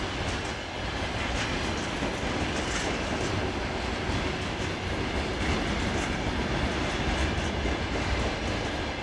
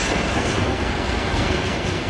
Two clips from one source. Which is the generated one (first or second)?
second